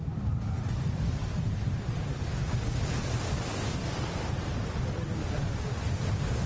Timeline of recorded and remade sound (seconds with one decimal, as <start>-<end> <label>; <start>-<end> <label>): 0.0-4.6 recorded; 4.6-6.5 remade